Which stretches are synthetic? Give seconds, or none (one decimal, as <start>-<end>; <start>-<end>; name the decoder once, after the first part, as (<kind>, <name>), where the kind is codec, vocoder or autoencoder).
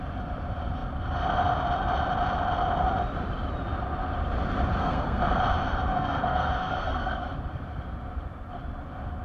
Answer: 4.8-5.4 (codec, SNAC); 5.9-7.2